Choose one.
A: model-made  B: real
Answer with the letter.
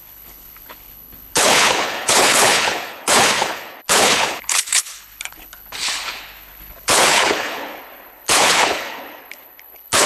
A